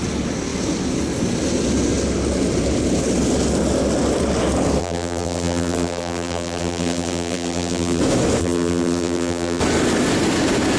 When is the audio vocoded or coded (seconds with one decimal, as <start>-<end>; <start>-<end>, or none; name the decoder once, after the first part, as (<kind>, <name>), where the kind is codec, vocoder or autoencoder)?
4.8-8.0 (vocoder, BigVGAN v2); 8.4-9.6